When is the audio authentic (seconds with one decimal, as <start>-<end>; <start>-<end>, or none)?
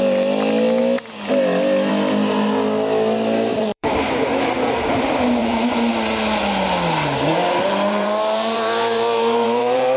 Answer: 0.0-3.5; 4.0-5.4; 5.9-7.4